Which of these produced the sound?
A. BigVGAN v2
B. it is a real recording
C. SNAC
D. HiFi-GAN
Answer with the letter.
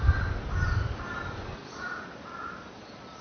B